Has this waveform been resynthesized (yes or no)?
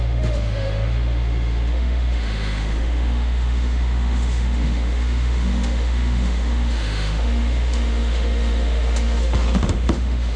yes